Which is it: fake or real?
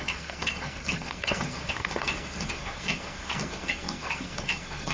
fake